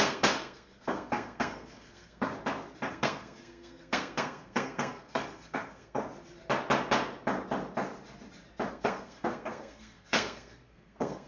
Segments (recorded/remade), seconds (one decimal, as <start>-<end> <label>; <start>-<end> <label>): 0.0-2.3 remade; 2.3-2.9 recorded; 2.9-6.0 remade; 6.0-8.7 recorded; 8.7-11.3 remade